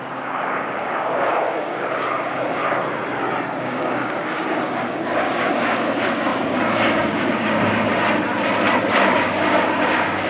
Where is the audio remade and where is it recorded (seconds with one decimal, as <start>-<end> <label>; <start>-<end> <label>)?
0.0-2.6 remade; 2.6-3.6 recorded; 3.6-7.9 remade; 7.9-8.9 recorded; 8.9-10.3 remade